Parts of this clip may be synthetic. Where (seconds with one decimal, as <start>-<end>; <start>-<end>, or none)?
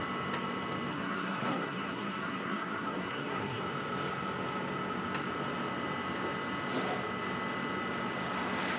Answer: 0.9-3.6